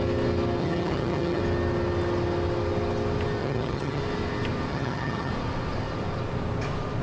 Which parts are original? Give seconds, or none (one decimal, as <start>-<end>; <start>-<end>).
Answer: 0.0-0.6; 1.4-3.4; 4.0-4.7; 5.3-7.0